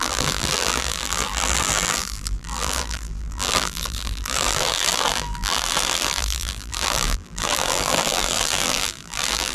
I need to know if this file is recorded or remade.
remade